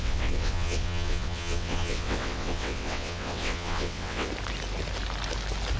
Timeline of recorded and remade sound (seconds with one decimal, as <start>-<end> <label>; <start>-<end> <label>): 0.0-4.3 remade; 4.3-5.8 recorded